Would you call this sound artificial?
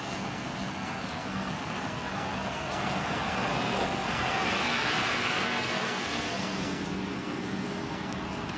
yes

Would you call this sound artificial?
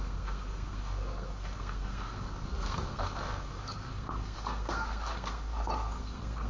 yes